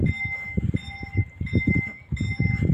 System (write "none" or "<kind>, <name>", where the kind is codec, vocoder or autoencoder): none